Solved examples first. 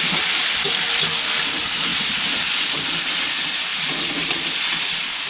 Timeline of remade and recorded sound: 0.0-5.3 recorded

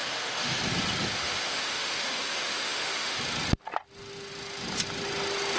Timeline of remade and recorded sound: 0.0-0.6 remade; 0.6-1.2 recorded; 1.2-3.2 remade; 3.2-5.6 recorded